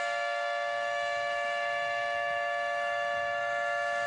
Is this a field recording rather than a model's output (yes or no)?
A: no